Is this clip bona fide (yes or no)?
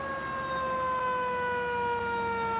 yes